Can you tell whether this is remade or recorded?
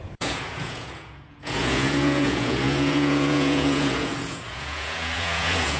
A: remade